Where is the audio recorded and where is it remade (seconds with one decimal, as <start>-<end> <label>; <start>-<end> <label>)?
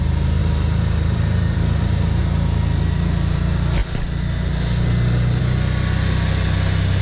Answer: 0.0-0.4 recorded; 0.4-2.2 remade; 2.2-7.0 recorded